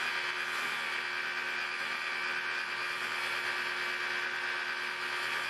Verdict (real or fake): real